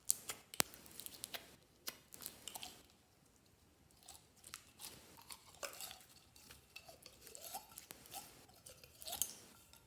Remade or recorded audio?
recorded